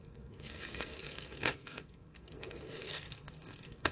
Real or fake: fake